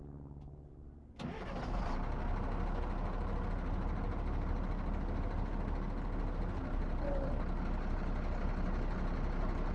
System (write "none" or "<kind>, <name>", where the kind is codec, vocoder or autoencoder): none